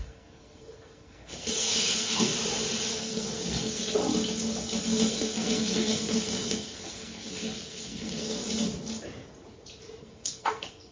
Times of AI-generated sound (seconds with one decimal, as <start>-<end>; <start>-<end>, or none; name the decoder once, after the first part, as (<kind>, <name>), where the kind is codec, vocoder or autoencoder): 0.0-2.3 (codec, SNAC); 2.9-4.0; 4.8-8.4; 10.0-10.9